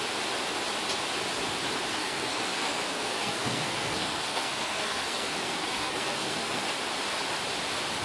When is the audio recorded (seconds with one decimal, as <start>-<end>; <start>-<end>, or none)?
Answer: 0.0-1.9; 6.6-8.0